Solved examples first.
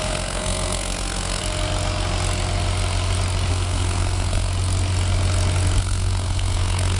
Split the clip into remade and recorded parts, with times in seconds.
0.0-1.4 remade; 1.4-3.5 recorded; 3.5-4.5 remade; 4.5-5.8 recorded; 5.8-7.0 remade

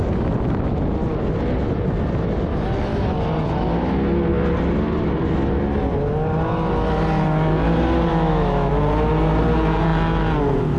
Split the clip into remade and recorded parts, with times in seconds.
0.0-8.1 recorded; 8.1-8.7 remade; 8.7-10.8 recorded

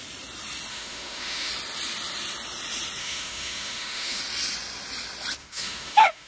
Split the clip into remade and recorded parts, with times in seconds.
0.0-0.7 recorded; 0.7-1.5 remade; 1.5-3.0 recorded; 3.0-4.2 remade; 4.2-5.4 recorded; 5.4-6.3 remade

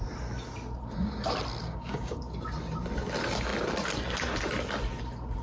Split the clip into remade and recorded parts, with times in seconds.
0.0-1.6 recorded; 1.6-2.2 remade; 2.2-5.4 recorded

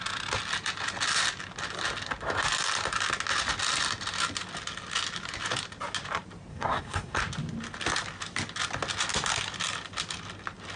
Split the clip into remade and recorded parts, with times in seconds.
0.0-6.5 recorded; 6.5-7.2 remade; 7.2-10.8 recorded

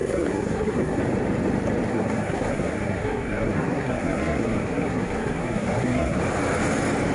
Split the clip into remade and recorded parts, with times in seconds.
0.0-1.0 remade; 1.0-1.9 recorded; 1.9-6.2 remade; 6.2-7.1 recorded